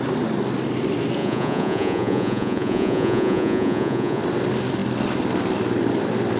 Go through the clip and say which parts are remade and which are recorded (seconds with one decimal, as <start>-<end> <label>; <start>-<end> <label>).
0.0-1.2 recorded; 1.2-4.2 remade; 4.2-6.4 recorded